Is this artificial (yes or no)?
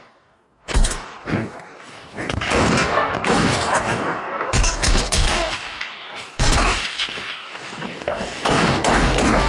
yes